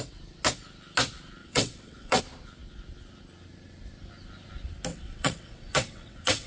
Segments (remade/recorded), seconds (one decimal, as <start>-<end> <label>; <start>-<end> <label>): 0.0-1.4 recorded; 1.4-2.2 remade; 2.2-4.9 recorded; 4.9-6.5 remade